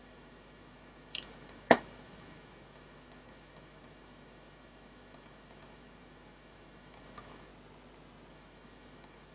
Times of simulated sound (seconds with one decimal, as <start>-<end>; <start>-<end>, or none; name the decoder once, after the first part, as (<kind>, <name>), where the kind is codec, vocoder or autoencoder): 0.0-7.5 (autoencoder, DAC-VAE); 8.3-9.3